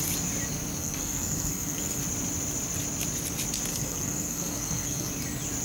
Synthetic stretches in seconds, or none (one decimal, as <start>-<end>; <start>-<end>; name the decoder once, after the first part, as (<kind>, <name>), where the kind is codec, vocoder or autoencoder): 0.8-2.0 (codec, SNAC); 3.7-5.1

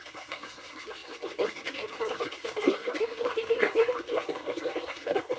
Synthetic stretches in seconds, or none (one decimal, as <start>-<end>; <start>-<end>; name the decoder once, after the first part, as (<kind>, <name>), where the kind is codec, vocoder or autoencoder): 0.0-5.4 (codec, SNAC)

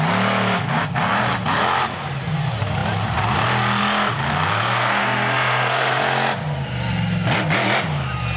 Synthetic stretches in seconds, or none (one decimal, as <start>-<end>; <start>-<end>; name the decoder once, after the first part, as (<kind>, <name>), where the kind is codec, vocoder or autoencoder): 4.3-6.0 (codec, SNAC)

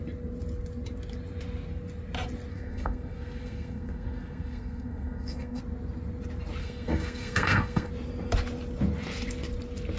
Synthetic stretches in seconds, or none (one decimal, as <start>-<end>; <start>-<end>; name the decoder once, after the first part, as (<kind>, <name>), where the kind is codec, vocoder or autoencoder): 2.5-5.6 (codec, SNAC); 6.6-7.9

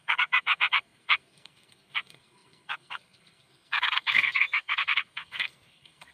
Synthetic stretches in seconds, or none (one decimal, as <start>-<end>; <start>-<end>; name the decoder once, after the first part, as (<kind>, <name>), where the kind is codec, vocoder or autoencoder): 0.0-6.1 (codec, SNAC)

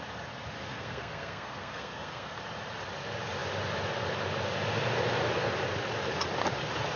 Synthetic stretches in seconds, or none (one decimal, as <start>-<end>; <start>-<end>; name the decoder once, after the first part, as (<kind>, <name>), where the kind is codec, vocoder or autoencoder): 0.7-2.4 (codec, SNAC)

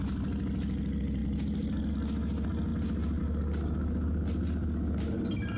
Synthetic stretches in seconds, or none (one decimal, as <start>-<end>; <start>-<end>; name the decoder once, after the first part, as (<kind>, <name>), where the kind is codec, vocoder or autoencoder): none

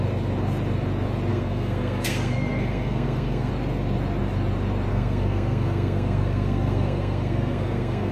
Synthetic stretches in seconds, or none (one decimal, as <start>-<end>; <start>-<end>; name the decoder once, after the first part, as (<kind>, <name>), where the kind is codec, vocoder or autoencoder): 1.3-3.5 (codec, SNAC); 4.9-8.1